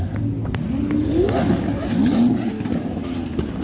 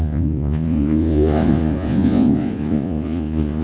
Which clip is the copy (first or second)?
second